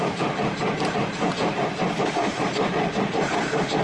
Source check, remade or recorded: remade